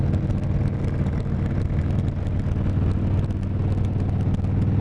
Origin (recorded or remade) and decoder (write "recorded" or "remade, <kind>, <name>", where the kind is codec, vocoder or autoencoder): recorded